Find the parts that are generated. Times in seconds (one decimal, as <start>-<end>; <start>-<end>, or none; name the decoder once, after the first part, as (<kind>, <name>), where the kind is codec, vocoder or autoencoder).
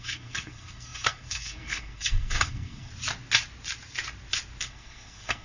0.0-2.9 (codec, SNAC); 4.6-5.4